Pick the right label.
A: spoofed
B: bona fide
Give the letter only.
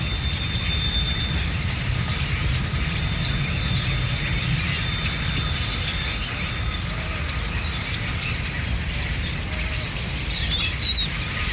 B